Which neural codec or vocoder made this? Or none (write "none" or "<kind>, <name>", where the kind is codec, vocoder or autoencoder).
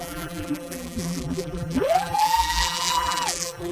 vocoder, BigVGAN v2